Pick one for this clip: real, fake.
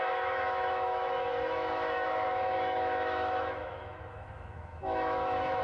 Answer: fake